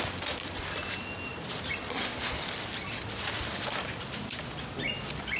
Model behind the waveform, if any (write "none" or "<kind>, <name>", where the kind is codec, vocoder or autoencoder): none